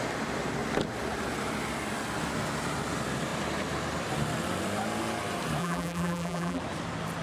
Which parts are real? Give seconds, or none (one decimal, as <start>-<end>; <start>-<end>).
0.0-5.6; 6.6-7.2